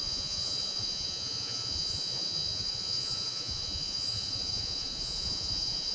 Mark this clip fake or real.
fake